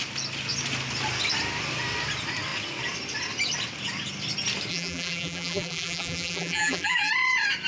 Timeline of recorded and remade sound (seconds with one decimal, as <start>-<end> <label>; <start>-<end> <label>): 0.0-4.7 recorded; 4.7-7.1 remade; 7.1-7.7 recorded